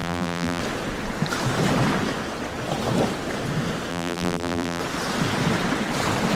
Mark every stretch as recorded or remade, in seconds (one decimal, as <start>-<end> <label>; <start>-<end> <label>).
0.0-0.6 remade; 0.6-3.9 recorded; 3.9-4.8 remade; 4.8-6.3 recorded